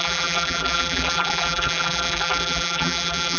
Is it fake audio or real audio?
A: fake